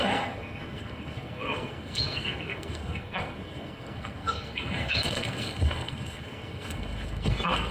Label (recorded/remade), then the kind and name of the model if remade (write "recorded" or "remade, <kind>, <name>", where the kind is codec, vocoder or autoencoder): remade, codec, SNAC